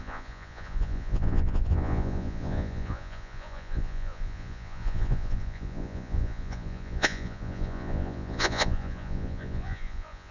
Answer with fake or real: fake